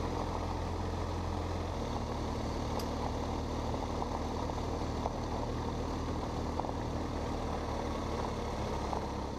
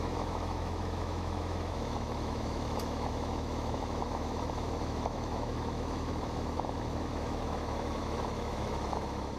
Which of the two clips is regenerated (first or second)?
second